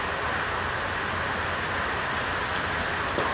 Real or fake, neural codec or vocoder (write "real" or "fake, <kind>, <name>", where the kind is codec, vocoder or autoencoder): real